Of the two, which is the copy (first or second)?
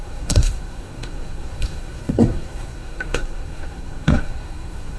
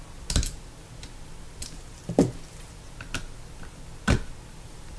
first